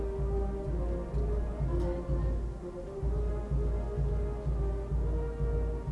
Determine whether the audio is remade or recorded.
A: recorded